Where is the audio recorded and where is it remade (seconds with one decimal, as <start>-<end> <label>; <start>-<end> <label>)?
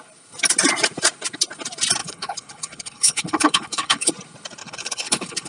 0.0-2.0 recorded; 2.0-4.1 remade; 4.1-4.6 recorded; 4.6-5.5 remade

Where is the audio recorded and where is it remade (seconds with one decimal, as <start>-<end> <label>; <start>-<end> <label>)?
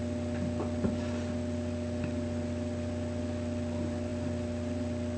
0.0-5.2 recorded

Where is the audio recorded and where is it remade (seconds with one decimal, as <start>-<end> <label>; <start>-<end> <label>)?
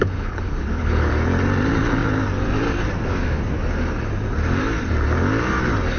0.0-1.1 remade; 1.1-6.0 recorded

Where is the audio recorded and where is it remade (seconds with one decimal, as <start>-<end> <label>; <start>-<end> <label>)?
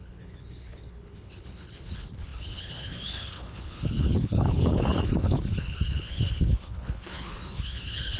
0.0-8.2 remade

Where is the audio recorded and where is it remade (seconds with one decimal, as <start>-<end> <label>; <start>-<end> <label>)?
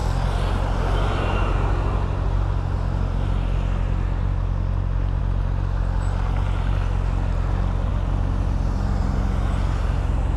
0.0-10.4 recorded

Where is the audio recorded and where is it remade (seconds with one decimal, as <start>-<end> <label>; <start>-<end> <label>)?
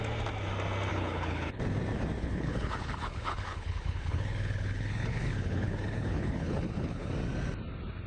0.0-0.9 recorded; 0.9-1.6 remade; 1.6-2.2 recorded; 2.2-7.1 remade; 7.1-8.1 recorded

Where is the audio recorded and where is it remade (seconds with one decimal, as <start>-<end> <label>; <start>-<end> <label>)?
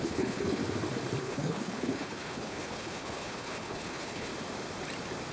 0.0-0.6 remade; 0.6-1.2 recorded; 1.2-4.3 remade; 4.3-5.3 recorded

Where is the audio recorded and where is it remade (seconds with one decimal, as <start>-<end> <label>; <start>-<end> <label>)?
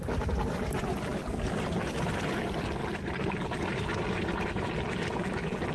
0.0-5.7 recorded